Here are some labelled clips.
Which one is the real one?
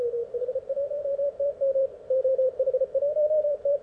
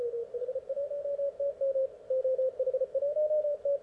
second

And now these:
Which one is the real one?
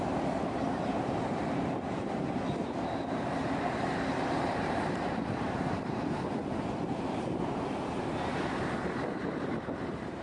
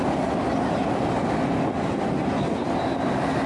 second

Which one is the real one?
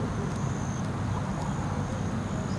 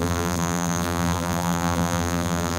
first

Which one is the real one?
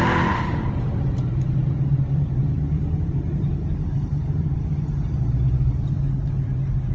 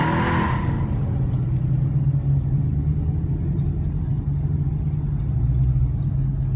second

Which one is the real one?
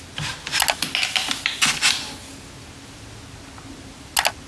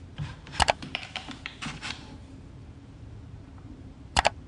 first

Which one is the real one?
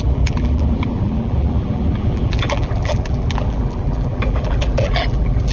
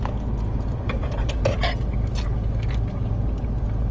second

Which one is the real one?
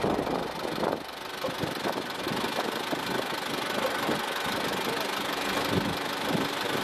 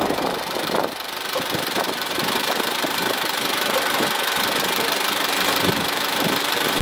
first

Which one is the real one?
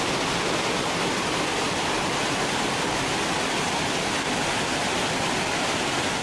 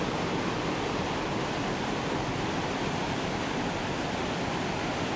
first